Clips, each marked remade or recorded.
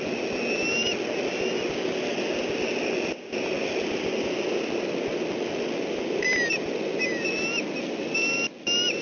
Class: recorded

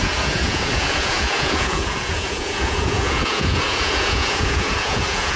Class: remade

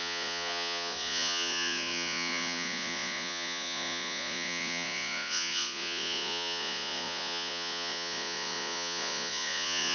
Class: remade